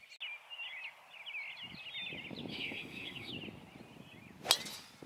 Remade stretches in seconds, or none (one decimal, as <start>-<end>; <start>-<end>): 2.5-3.3